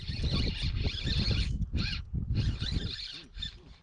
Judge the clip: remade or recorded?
recorded